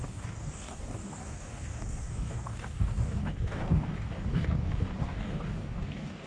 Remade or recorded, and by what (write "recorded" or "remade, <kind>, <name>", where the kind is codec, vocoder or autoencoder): remade, codec, DAC